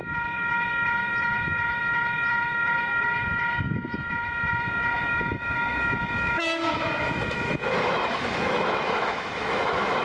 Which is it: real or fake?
fake